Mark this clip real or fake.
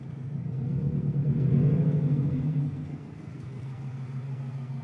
fake